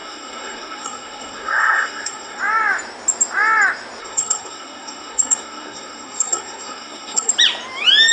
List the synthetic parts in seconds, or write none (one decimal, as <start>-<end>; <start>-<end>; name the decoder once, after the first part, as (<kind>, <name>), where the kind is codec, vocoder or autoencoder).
0.0-2.4 (codec, SNAC); 4.0-7.3